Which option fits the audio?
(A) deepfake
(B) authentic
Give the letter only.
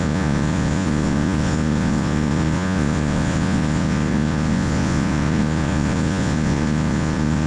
A